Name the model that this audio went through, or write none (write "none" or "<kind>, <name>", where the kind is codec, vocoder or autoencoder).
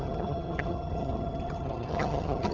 vocoder, HiFi-GAN